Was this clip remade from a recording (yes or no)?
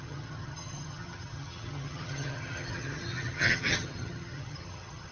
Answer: yes